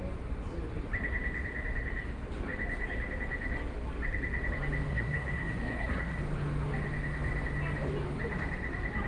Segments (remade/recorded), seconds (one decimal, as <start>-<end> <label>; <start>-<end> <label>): 0.0-4.9 recorded; 4.9-6.2 remade; 6.2-9.1 recorded